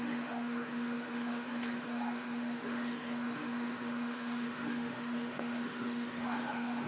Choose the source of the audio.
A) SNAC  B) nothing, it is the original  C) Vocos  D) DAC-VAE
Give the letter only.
D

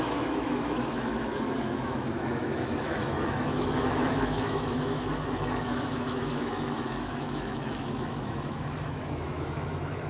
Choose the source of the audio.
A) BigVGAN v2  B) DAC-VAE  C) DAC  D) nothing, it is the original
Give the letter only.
B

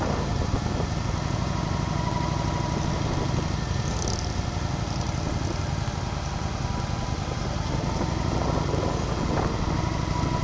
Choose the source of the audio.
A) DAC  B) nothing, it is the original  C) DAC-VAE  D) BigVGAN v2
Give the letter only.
B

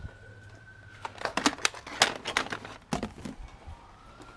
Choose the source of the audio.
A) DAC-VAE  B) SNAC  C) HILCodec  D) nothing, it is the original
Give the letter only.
D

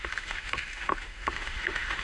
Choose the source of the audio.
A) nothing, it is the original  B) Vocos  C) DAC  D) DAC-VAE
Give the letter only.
D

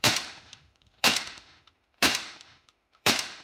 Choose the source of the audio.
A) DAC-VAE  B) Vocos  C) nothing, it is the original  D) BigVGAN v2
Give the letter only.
A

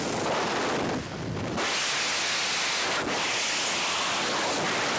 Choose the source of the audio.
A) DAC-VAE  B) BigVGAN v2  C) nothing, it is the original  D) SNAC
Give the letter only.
C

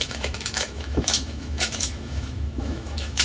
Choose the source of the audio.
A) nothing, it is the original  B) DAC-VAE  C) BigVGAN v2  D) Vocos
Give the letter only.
B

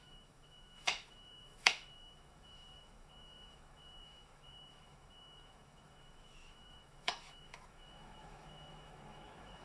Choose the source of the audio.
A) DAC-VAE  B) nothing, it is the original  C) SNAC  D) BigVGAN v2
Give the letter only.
A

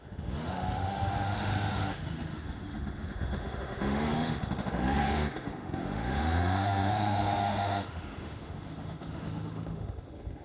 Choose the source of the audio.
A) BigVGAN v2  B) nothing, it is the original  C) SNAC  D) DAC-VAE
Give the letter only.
D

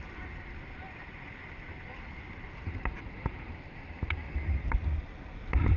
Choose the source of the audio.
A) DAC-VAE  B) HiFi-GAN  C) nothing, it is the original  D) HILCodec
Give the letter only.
C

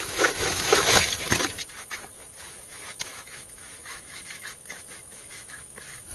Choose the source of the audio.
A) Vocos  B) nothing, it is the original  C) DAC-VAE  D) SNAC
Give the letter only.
C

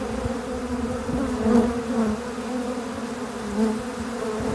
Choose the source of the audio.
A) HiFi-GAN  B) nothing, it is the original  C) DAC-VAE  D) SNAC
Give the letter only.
B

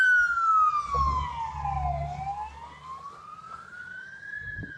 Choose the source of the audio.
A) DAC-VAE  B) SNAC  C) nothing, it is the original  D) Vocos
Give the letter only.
C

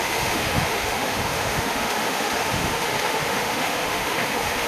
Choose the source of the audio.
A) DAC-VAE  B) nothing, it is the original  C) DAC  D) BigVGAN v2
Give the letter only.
A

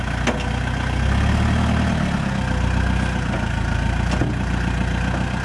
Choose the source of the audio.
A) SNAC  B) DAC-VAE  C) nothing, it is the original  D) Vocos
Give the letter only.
C